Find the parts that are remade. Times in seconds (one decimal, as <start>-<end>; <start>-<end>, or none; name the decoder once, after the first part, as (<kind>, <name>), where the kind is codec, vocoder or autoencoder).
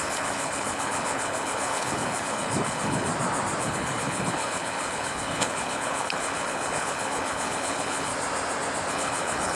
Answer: 0.0-3.1 (codec, HILCodec); 3.6-8.1; 8.9-9.6